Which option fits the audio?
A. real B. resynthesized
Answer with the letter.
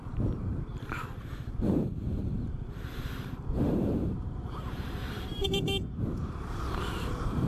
B